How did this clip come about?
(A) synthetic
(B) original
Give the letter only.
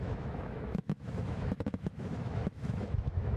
A